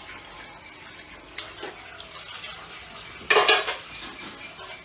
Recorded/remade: recorded